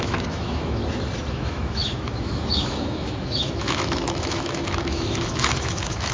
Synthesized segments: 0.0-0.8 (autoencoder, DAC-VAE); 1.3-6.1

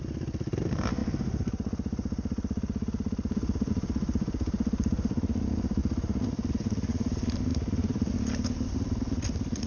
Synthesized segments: 7.5-8.1 (vocoder, BigVGAN v2)